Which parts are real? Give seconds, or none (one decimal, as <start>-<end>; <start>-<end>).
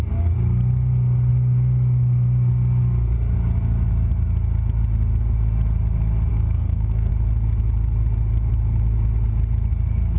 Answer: 0.0-6.3; 7.1-10.2